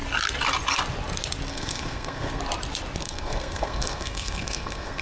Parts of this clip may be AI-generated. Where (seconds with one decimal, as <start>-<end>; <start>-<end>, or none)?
1.5-2.4; 3.0-5.0